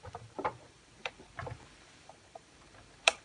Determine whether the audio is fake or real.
fake